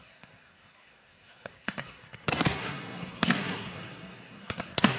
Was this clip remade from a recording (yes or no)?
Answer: yes